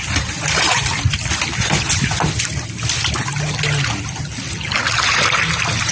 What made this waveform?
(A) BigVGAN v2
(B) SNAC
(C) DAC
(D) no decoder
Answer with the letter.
D